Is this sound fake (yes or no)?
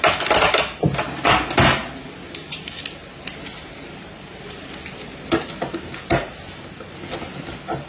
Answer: no